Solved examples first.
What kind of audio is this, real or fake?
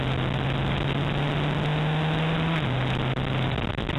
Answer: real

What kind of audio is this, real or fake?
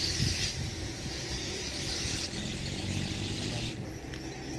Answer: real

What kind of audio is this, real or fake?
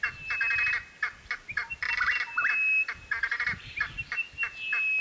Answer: real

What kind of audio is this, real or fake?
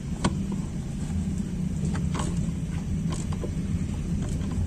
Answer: real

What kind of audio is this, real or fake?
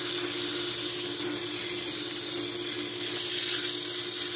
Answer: real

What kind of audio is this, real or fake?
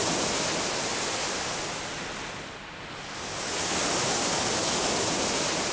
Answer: real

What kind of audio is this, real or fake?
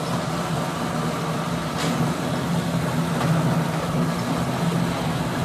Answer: real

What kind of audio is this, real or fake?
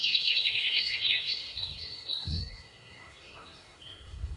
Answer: fake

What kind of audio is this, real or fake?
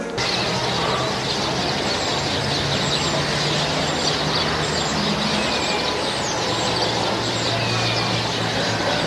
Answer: real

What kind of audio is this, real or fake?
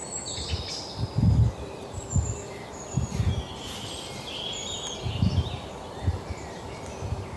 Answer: real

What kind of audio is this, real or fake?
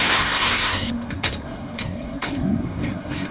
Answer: fake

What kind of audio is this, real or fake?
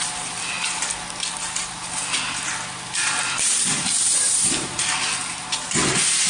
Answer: real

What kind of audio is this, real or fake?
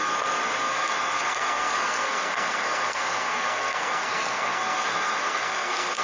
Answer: fake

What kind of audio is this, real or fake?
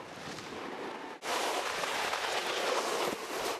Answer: real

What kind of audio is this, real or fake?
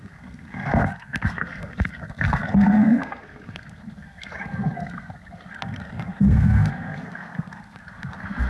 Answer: fake